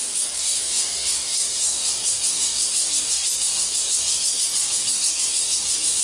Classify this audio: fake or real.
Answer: fake